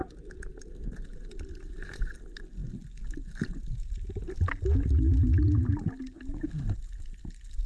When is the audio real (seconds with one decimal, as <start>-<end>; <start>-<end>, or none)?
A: 0.0-7.7